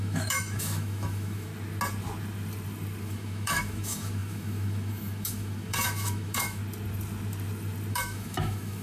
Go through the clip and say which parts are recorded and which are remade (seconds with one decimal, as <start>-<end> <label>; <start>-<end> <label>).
0.0-1.5 remade; 1.5-3.0 recorded; 3.0-6.6 remade; 6.6-7.9 recorded; 7.9-8.8 remade